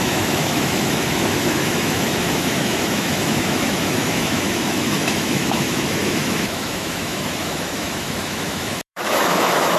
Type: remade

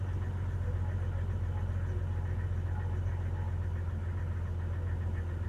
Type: recorded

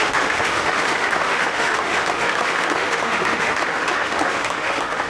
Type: remade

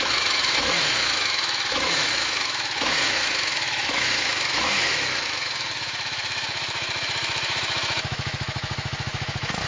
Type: remade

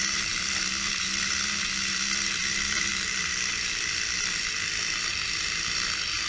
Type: recorded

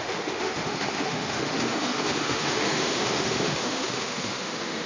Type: remade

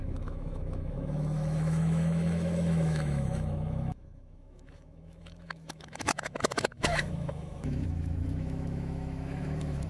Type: remade